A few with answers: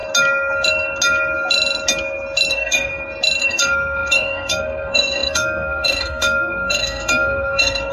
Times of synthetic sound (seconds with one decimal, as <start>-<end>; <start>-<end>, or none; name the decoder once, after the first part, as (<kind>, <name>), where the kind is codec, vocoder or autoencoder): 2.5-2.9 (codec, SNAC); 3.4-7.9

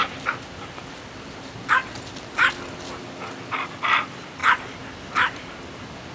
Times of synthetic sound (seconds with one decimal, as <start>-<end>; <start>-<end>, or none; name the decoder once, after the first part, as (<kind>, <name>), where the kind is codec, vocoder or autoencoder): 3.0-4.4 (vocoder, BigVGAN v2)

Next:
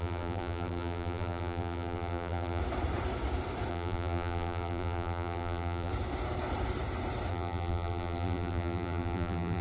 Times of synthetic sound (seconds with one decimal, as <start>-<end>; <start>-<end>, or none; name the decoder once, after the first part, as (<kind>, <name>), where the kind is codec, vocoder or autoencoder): 0.0-2.6 (vocoder, BigVGAN v2); 3.7-5.9; 7.3-9.6

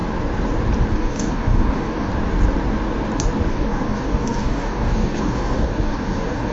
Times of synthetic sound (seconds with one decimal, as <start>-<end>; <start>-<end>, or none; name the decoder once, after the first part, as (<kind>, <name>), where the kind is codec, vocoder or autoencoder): 0.9-2.1 (codec, DAC); 3.5-6.5

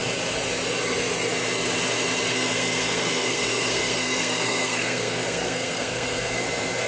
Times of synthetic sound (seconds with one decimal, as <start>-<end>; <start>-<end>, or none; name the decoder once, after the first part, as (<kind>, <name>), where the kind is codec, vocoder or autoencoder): 2.3-6.4 (codec, SNAC)

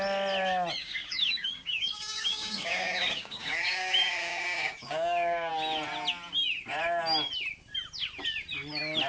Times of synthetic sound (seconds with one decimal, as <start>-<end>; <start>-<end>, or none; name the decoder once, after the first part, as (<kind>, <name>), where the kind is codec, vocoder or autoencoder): 0.8-5.5 (codec, DAC)

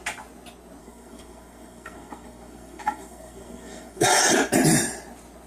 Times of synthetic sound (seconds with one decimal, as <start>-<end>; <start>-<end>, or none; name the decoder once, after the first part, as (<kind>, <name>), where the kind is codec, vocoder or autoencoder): 0.8-4.1 (codec, SNAC)